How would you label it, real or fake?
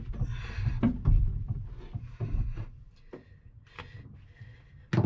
real